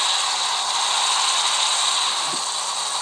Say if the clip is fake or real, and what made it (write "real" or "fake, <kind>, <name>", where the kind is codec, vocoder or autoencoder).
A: real